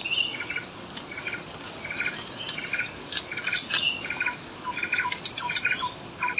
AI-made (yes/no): no